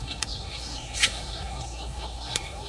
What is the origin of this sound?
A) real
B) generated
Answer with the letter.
B